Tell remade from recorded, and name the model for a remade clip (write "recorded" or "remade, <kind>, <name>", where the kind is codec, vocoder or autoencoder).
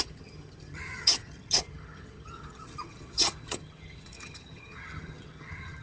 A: remade, vocoder, HiFi-GAN